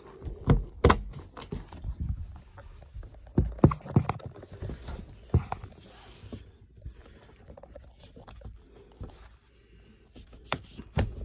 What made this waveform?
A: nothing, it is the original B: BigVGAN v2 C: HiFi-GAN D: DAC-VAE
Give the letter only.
A